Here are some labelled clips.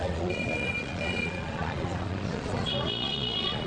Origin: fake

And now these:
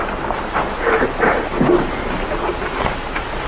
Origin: real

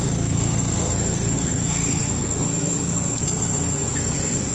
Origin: fake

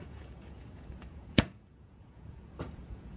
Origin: fake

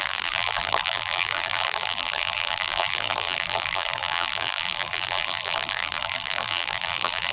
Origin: fake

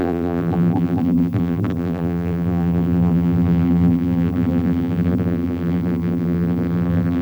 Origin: fake